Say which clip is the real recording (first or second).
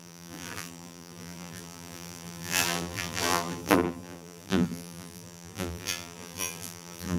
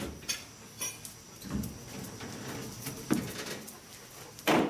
second